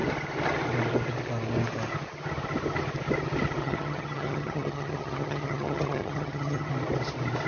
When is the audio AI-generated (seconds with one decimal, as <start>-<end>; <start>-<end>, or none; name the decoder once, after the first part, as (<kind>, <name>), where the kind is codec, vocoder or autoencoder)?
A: 3.6-6.7 (vocoder, HiFi-GAN)